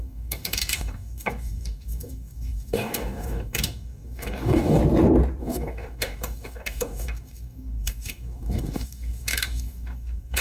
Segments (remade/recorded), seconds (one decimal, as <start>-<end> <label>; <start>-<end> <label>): 0.0-4.8 remade; 4.8-5.4 recorded; 5.4-10.4 remade